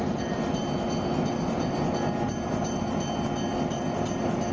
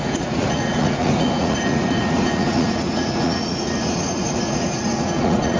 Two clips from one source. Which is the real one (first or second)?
first